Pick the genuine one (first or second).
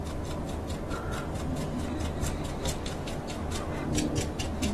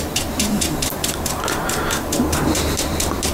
first